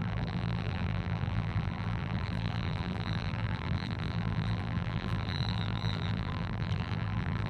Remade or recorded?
remade